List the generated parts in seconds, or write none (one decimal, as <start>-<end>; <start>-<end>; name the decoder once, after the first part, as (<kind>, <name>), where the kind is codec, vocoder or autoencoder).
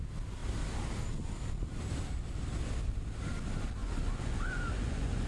3.8-5.3 (vocoder, Vocos)